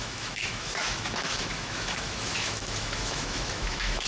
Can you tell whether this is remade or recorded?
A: remade